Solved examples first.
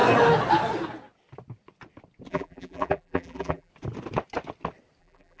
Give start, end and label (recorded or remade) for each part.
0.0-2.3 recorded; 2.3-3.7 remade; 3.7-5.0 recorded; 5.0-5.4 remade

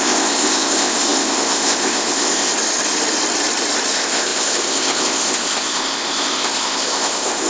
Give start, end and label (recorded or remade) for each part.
0.0-2.5 remade; 2.5-3.9 recorded; 3.9-7.5 remade

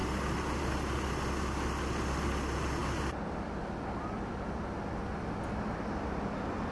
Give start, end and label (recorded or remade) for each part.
0.0-6.7 recorded

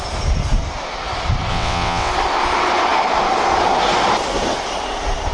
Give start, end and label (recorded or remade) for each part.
0.0-1.5 recorded; 1.5-2.1 remade; 2.1-5.3 recorded

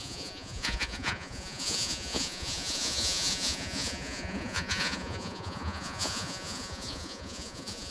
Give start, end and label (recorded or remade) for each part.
0.0-7.9 remade

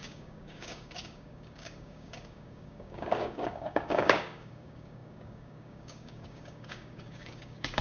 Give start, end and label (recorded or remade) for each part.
0.0-7.8 remade